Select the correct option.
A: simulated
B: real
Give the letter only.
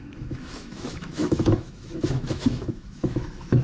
A